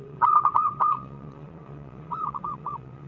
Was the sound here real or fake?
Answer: fake